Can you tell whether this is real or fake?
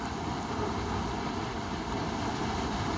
fake